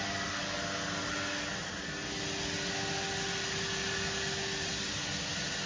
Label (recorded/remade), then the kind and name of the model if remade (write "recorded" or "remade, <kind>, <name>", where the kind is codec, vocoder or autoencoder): recorded